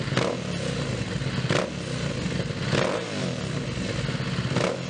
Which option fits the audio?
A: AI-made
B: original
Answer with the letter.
B